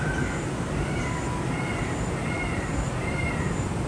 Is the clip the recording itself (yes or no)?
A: yes